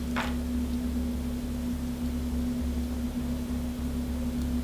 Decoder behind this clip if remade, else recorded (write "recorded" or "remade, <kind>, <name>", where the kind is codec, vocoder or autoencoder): recorded